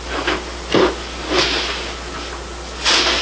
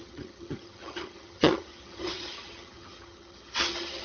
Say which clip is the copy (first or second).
second